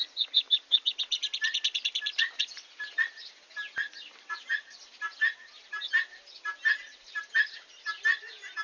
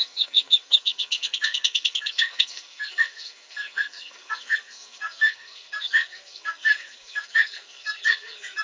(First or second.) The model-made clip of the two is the second